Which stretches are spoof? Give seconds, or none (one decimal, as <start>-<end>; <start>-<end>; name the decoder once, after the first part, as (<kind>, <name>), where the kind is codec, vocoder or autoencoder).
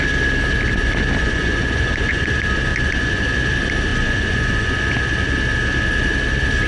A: 1.2-2.2 (vocoder, Vocos); 2.7-3.2; 3.9-4.8